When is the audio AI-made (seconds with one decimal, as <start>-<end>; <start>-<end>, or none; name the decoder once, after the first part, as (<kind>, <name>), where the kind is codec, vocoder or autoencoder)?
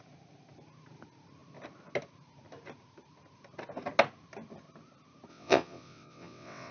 5.3-6.7 (vocoder, WaveNeXt)